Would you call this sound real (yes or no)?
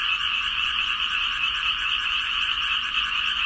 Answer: no